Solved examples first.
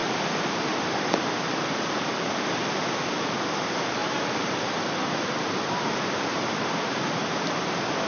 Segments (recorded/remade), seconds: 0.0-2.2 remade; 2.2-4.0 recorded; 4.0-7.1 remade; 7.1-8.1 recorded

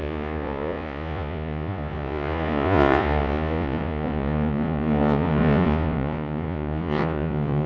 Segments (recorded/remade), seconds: 0.0-7.7 remade

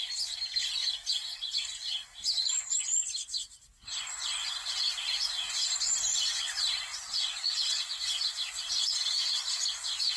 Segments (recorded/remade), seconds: 0.0-6.9 recorded; 6.9-7.8 remade; 7.8-10.2 recorded

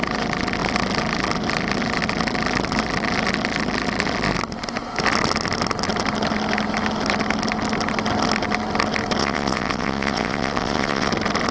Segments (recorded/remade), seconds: 0.0-9.2 recorded; 9.2-11.1 remade; 11.1-11.5 recorded